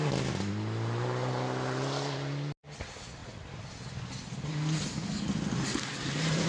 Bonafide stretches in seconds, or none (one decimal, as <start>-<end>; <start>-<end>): 0.0-6.5